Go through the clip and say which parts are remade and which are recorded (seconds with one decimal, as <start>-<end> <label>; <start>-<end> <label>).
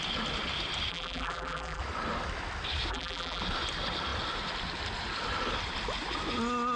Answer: 0.0-0.9 recorded; 0.9-1.8 remade; 1.8-2.9 recorded; 2.9-3.4 remade; 3.4-6.8 recorded